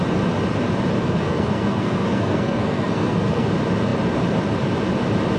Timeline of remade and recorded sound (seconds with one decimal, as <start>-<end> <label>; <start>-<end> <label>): 0.0-1.0 recorded; 1.0-3.5 remade; 3.5-5.4 recorded